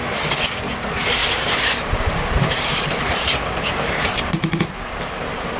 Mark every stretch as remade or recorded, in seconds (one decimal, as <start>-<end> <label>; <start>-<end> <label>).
0.0-1.2 recorded; 1.2-4.6 remade; 4.6-5.6 recorded